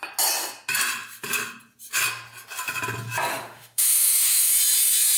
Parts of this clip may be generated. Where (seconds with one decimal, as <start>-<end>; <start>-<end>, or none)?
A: 3.3-4.5